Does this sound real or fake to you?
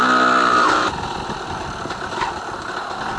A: real